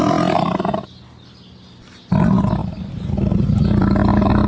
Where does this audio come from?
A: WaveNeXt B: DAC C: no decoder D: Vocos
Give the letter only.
C